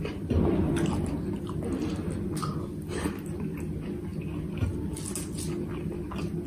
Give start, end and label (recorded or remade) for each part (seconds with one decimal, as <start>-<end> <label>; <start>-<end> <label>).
0.0-6.5 recorded